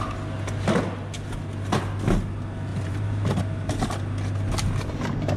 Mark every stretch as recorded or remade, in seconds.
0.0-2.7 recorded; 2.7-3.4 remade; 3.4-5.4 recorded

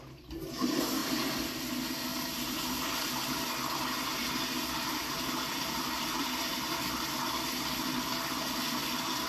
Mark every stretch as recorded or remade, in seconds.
0.0-1.0 recorded; 1.0-1.6 remade; 1.6-2.1 recorded; 2.1-7.0 remade; 7.0-9.3 recorded

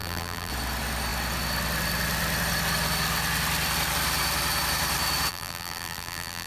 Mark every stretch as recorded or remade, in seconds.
0.0-0.5 remade; 0.5-5.3 recorded; 5.3-6.5 remade

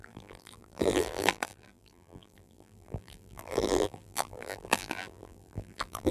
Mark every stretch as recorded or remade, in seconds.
0.0-6.1 remade

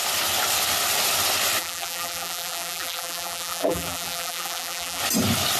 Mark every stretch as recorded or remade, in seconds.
0.0-1.6 recorded; 1.6-5.0 remade; 5.0-5.6 recorded

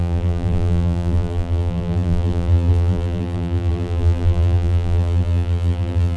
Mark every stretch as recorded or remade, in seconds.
0.0-6.2 remade

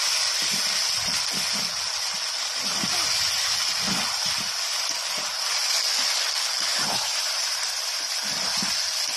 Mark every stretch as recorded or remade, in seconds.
0.0-6.7 recorded; 6.7-7.8 remade; 7.8-9.2 recorded